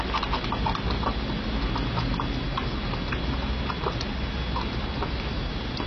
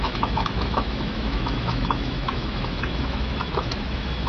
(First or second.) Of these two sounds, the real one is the first